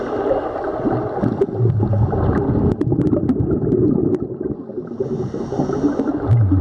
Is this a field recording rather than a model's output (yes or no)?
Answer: yes